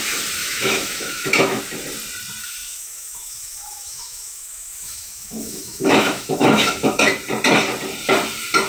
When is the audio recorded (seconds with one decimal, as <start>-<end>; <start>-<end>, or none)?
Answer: 0.0-0.4; 1.6-2.4; 7.0-8.7

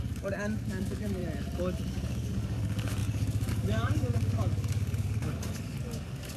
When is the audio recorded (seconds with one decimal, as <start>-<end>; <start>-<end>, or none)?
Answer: 1.2-1.9

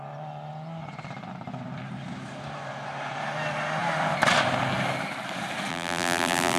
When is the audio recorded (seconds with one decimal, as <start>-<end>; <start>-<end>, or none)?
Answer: 0.0-5.7

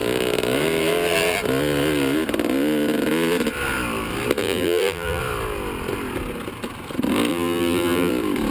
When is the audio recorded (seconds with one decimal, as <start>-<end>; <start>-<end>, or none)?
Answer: 0.0-4.4; 5.2-7.3; 8.1-8.5

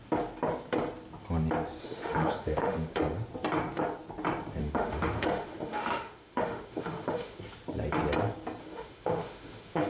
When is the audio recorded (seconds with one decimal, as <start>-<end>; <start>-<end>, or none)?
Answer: 0.0-1.8; 3.0-4.6; 7.4-8.6

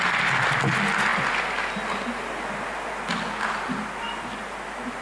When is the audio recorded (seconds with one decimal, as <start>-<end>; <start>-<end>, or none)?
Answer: 0.0-5.0

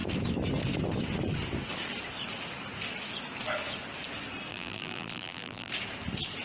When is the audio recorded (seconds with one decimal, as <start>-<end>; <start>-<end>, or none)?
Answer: 0.0-4.5; 5.7-6.4